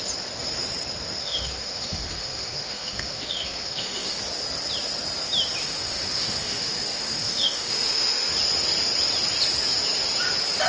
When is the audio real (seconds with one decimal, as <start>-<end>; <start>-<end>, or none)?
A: 0.0-1.2; 4.2-5.6; 8.3-10.7